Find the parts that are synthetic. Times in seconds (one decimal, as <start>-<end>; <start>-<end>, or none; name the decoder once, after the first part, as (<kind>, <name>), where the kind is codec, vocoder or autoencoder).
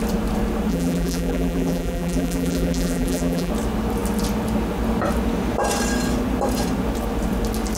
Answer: 0.7-3.5 (vocoder, BigVGAN v2)